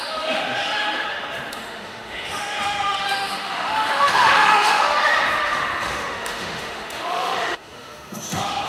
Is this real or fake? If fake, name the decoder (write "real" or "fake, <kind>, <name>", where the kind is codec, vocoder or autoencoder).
fake, autoencoder, DAC-VAE